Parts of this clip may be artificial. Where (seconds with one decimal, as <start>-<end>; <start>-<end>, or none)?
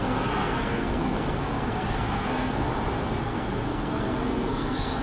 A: 0.0-2.7; 3.2-5.0